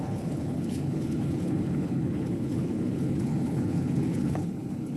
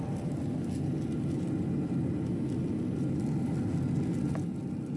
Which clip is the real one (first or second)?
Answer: second